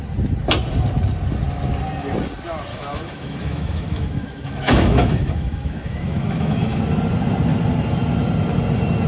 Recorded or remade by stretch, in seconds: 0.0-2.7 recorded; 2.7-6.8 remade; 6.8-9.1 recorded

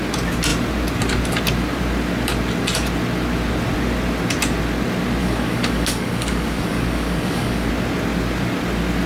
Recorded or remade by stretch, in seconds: 0.0-5.2 recorded; 5.2-7.7 remade; 7.7-9.1 recorded

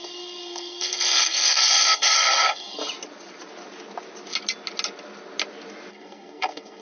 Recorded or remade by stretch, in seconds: 0.0-2.8 remade; 2.8-5.9 recorded; 5.9-6.8 remade

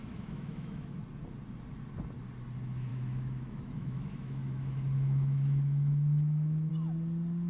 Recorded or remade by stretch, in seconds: 0.0-1.0 remade; 1.0-2.9 recorded; 2.9-6.7 remade; 6.7-7.5 recorded

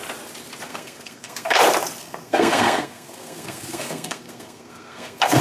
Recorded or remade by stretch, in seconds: 0.0-0.7 recorded; 0.7-1.6 remade; 1.6-2.0 recorded; 2.0-5.4 remade